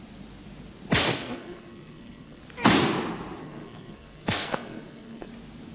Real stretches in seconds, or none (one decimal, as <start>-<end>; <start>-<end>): 0.0-1.1; 2.4-3.4; 5.3-5.7